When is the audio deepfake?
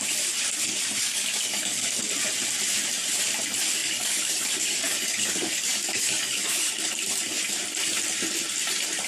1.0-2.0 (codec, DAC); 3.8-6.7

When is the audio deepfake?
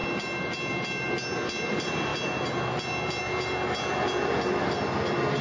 none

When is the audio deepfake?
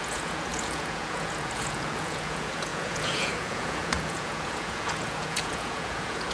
0.0-6.3 (vocoder, Vocos)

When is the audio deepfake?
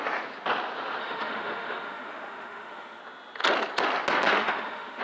1.0-3.0 (autoencoder, DAC-VAE); 4.4-5.0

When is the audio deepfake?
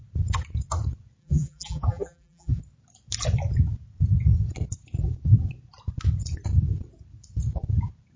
1.2-2.6 (vocoder, BigVGAN v2)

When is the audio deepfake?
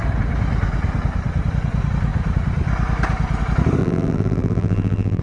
3.8-5.2 (vocoder, BigVGAN v2)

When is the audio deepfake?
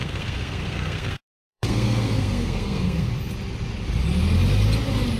0.0-3.1 (codec, SNAC)